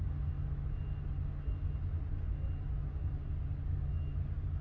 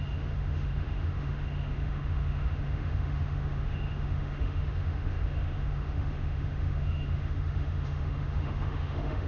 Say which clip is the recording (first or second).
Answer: first